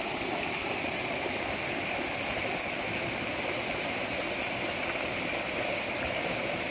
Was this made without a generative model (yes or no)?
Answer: yes